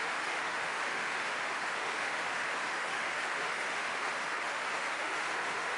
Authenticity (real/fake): fake